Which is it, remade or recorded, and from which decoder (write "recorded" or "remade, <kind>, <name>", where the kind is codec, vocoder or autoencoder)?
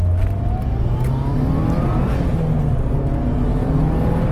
recorded